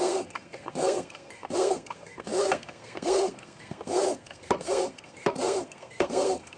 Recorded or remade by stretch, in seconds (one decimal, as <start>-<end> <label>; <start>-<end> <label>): 0.0-6.6 remade